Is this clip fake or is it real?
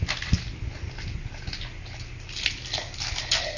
real